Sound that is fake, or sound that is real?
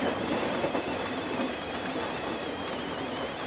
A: real